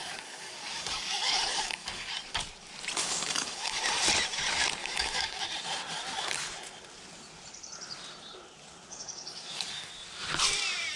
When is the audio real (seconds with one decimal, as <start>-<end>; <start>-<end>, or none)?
2.1-3.0; 3.8-4.8; 5.4-8.9; 9.9-11.0